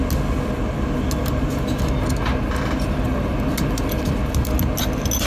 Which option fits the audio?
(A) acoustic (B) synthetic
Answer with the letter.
A